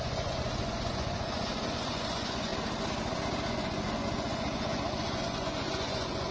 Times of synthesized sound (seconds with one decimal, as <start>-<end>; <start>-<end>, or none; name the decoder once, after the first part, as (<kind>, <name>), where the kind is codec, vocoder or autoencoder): 0.0-2.5 (vocoder, Vocos); 3.5-6.3